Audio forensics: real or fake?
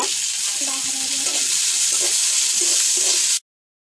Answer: real